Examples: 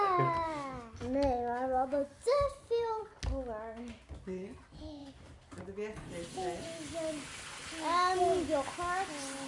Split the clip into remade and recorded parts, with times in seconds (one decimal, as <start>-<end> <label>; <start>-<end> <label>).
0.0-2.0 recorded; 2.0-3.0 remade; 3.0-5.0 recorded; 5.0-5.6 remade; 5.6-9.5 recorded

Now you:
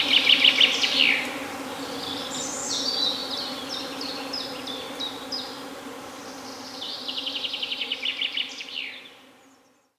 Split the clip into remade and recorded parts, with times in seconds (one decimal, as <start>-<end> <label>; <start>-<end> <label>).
0.0-10.0 recorded

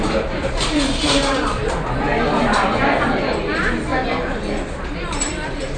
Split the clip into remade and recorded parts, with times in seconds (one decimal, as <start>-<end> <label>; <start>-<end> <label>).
0.0-1.6 remade; 1.6-2.4 recorded; 2.4-3.9 remade; 3.9-4.9 recorded; 4.9-5.8 remade